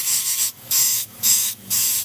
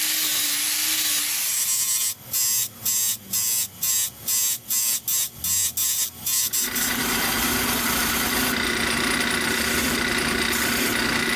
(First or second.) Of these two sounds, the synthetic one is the first